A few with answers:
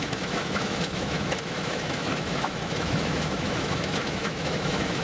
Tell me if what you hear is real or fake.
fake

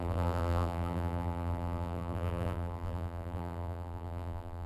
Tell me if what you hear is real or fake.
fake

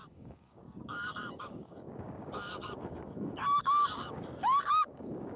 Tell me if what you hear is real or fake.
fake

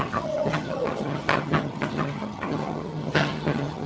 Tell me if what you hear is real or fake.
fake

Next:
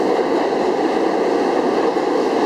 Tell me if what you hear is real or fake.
real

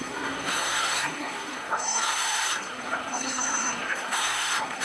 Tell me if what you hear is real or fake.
fake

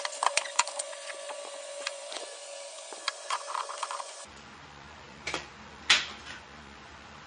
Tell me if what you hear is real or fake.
fake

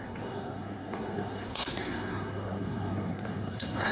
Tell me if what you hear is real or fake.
fake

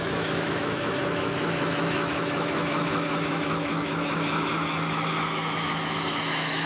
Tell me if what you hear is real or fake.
fake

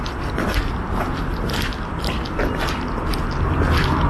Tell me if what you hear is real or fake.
real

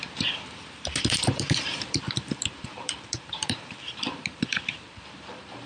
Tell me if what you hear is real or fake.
fake